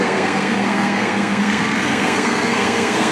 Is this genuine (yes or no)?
no